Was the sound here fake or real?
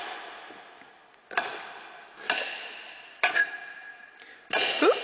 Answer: real